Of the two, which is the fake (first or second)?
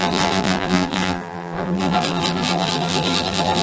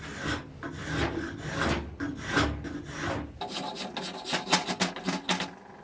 first